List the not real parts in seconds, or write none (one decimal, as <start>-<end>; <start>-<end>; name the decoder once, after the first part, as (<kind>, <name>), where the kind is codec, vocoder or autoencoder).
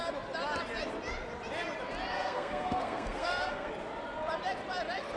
2.1-3.7 (codec, SNAC)